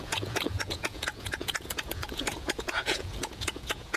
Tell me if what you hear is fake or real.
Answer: fake